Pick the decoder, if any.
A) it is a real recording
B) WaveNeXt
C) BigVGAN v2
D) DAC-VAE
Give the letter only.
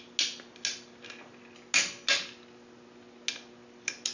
A